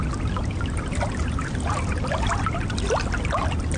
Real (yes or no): yes